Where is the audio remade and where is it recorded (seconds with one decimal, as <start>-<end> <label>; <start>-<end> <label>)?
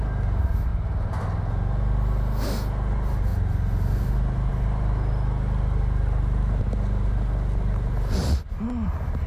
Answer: 0.0-0.7 recorded; 0.7-1.2 remade; 1.2-9.3 recorded